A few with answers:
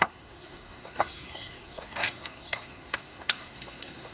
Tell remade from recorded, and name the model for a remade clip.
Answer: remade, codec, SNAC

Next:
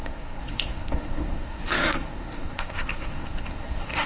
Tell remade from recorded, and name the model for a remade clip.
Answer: remade, codec, SNAC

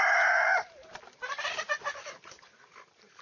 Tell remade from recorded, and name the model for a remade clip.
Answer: recorded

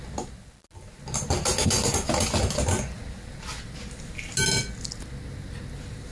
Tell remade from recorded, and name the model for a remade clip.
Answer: recorded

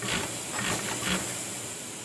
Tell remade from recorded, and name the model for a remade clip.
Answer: recorded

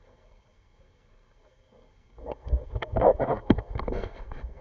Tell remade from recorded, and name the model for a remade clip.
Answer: remade, codec, SNAC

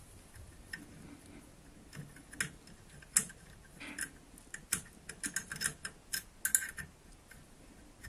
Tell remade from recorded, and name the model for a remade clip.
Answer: recorded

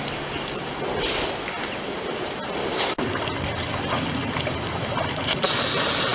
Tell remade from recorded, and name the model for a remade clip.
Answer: recorded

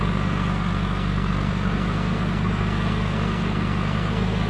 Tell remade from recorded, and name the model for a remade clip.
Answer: remade, codec, SNAC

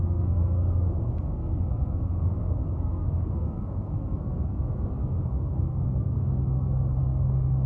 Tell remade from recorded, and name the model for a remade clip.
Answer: remade, codec, SNAC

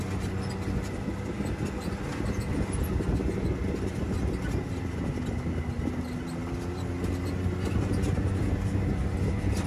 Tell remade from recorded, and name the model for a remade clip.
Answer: recorded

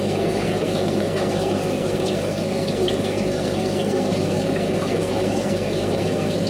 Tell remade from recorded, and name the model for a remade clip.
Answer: remade, codec, SNAC